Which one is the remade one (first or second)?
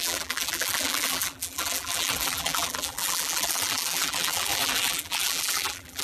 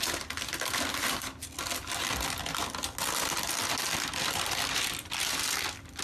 first